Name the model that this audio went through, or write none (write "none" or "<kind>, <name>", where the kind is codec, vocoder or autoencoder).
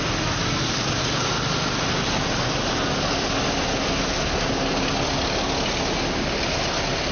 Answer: none